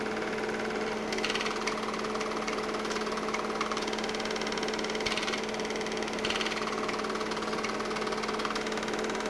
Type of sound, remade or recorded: recorded